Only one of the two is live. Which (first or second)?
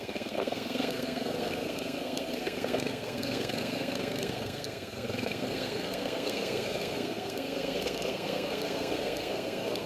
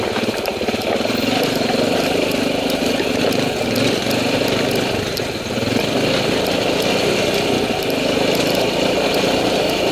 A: second